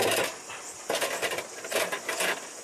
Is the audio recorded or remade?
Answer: recorded